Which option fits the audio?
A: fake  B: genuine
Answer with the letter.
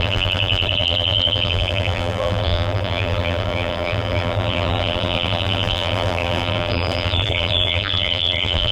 A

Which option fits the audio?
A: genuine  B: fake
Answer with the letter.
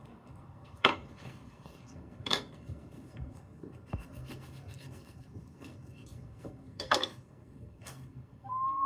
B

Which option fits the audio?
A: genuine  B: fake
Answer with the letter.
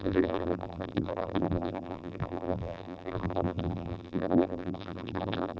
B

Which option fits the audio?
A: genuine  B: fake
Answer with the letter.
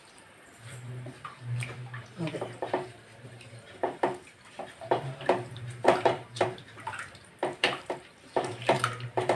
B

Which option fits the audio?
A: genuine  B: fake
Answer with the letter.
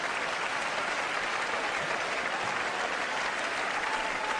A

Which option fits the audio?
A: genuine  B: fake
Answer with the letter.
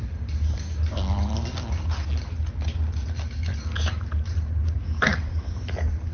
A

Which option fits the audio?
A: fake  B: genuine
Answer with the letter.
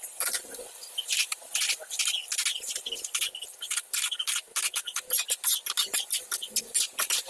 B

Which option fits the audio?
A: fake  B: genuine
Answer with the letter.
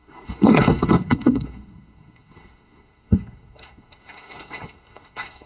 A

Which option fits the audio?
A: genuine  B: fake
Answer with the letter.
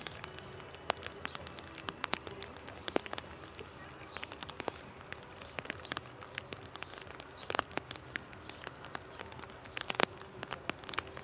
A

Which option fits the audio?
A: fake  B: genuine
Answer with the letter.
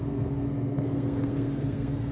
A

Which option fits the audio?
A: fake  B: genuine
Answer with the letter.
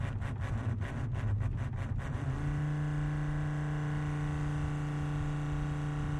B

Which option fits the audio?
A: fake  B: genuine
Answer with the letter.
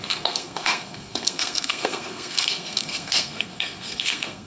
A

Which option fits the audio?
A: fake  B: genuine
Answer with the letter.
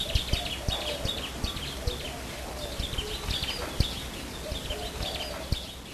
B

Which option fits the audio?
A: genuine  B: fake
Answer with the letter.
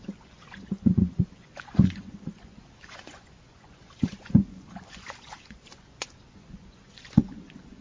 B